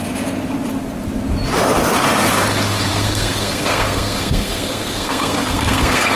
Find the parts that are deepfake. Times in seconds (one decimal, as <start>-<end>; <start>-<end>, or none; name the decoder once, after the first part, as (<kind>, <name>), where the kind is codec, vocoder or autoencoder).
2.9-6.2 (codec, SNAC)